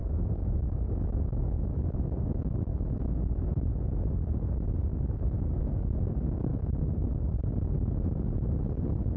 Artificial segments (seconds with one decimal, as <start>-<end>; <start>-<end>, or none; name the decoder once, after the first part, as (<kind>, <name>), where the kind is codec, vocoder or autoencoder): 0.0-3.8 (autoencoder, DAC-VAE); 4.9-5.6; 6.5-7.1